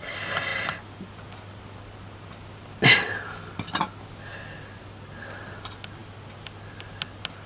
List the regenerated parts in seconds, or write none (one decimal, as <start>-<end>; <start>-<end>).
none

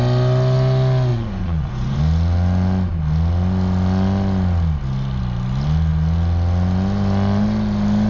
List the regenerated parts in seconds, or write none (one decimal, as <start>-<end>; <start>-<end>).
1.1-2.0

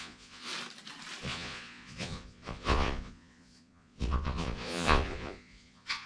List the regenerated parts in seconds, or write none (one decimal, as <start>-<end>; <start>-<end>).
0.0-0.5; 1.2-6.1